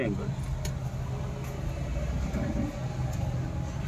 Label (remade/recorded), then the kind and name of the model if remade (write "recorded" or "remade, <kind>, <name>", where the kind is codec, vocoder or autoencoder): recorded